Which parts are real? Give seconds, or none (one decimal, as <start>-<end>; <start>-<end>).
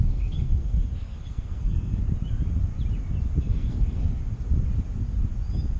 2.0-3.4; 4.2-5.8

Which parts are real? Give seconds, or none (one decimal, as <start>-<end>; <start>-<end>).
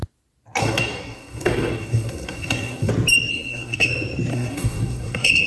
0.0-0.6; 2.9-3.3; 3.9-4.3